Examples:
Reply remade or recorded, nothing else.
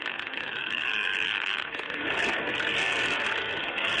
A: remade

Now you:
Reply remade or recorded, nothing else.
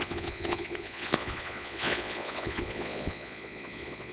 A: remade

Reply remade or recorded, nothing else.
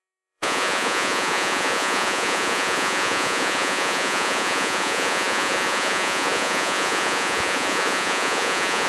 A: remade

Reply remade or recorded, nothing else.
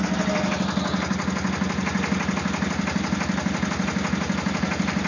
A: recorded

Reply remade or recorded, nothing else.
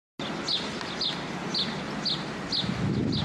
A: recorded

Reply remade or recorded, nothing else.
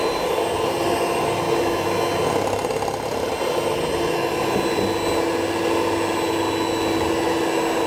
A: recorded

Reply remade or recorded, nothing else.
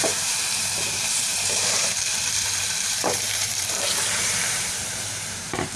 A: remade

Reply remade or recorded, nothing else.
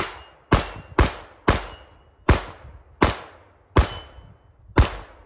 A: recorded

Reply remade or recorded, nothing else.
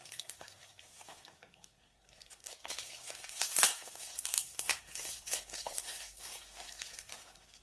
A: remade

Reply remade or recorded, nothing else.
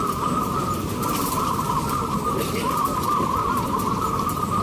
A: remade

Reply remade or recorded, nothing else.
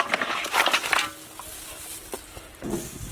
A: recorded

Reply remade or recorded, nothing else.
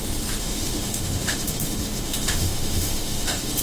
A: remade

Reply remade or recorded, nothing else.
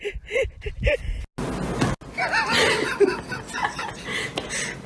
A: recorded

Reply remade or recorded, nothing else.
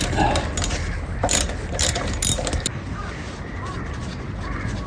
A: recorded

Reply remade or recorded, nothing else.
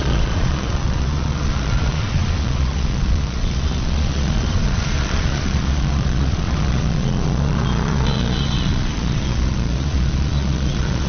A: remade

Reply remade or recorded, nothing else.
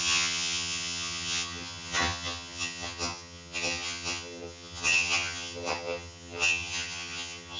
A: remade